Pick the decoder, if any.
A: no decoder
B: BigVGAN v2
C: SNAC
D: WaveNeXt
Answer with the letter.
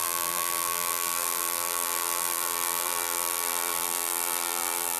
B